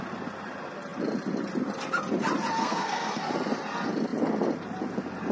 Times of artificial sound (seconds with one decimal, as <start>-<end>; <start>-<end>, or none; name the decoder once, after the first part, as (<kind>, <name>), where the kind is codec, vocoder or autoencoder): 2.6-3.3 (codec, SNAC)